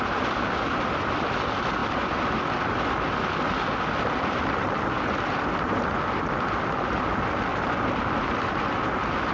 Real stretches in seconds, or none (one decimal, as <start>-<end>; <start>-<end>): 0.0-9.3